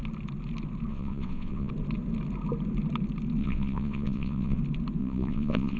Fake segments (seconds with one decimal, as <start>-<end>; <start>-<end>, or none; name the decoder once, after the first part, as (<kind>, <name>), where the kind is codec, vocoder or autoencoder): 0.9-1.7 (vocoder, WaveNeXt); 3.4-4.6; 5.0-5.8